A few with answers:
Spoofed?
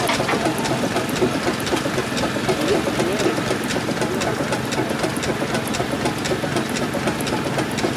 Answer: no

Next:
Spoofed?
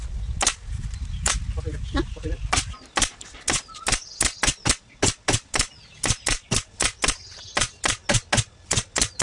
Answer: no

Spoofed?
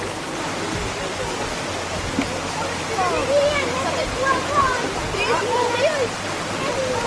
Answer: no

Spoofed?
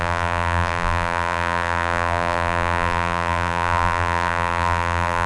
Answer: yes